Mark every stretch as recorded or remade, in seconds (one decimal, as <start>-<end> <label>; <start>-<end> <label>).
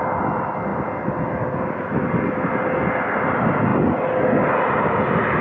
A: 0.0-5.4 recorded